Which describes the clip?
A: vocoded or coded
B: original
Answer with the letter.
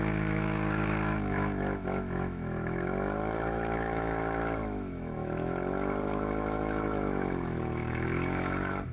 A